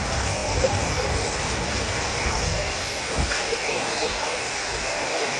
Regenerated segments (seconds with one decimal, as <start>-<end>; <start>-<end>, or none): 0.0-5.4